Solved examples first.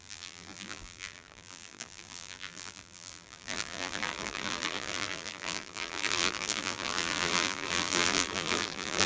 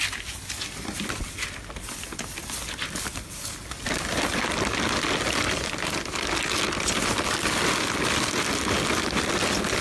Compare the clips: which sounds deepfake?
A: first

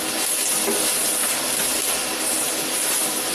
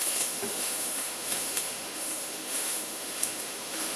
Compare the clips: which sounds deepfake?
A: second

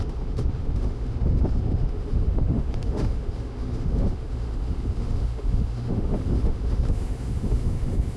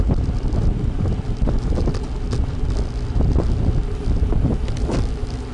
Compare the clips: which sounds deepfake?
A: first